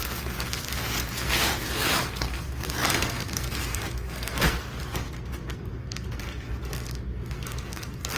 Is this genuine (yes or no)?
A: no